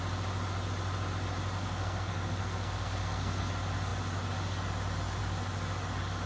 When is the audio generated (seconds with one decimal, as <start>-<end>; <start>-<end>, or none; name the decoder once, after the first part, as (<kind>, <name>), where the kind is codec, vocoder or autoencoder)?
1.6-3.5 (codec, SNAC)

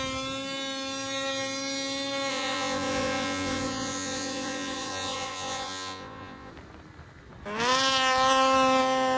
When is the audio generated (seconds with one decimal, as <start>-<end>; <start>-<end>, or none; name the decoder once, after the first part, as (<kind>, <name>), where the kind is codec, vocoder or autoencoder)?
2.3-6.5 (vocoder, Vocos)

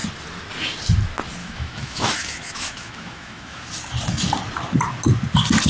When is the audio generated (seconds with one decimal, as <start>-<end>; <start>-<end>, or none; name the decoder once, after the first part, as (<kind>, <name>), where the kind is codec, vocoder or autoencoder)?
1.4-3.7 (autoencoder, DAC-VAE)